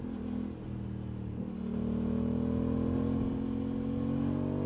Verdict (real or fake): real